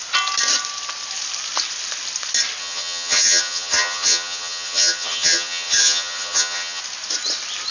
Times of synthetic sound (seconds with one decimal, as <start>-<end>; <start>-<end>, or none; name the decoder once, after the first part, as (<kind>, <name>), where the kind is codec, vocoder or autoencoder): 2.6-6.8 (vocoder, HiFi-GAN)